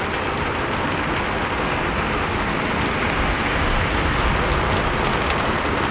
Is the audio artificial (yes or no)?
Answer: no